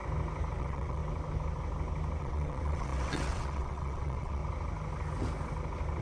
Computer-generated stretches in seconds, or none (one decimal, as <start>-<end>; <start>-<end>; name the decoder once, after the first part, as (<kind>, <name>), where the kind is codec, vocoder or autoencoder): 0.6-1.0 (vocoder, WaveNeXt); 2.2-4.4